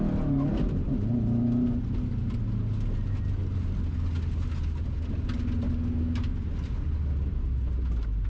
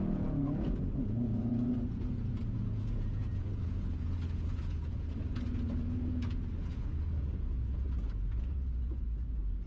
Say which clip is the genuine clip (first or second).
first